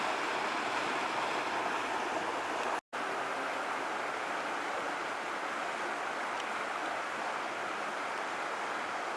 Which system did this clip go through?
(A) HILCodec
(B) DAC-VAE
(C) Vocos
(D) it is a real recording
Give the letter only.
D